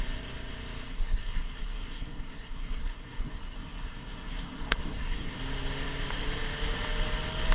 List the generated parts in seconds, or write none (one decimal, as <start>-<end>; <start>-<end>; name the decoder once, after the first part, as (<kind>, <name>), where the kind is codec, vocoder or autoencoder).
0.9-5.4 (codec, SNAC)